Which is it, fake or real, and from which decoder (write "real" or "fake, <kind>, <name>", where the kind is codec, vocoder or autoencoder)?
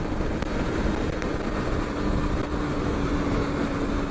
real